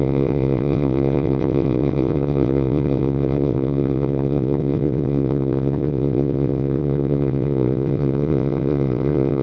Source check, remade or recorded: remade